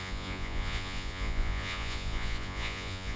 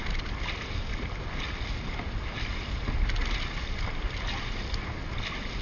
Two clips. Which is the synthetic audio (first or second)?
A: first